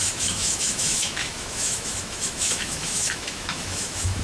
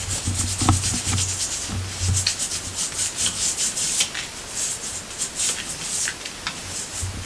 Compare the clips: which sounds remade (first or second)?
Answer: first